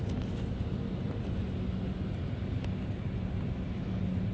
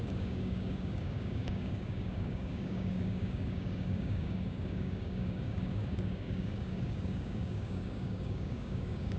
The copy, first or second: second